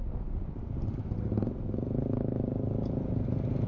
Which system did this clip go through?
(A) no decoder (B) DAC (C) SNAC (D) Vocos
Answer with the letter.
A